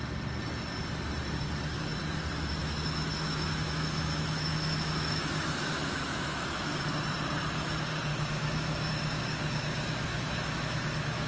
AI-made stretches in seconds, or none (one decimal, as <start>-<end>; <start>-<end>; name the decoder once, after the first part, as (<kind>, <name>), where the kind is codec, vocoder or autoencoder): 2.6-6.8 (autoencoder, DAC-VAE); 8.1-11.3